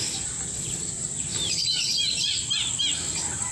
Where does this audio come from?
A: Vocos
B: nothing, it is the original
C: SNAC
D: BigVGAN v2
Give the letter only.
B